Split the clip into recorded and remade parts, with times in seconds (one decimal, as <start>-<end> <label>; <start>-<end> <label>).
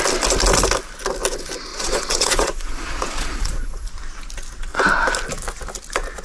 0.0-1.7 recorded; 1.7-3.9 remade; 3.9-6.2 recorded